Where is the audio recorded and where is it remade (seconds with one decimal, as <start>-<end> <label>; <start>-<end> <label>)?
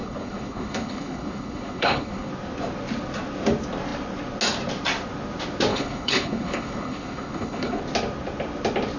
0.0-2.3 remade; 2.3-5.7 recorded; 5.7-7.8 remade; 7.8-9.0 recorded